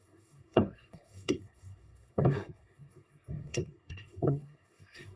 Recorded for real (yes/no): no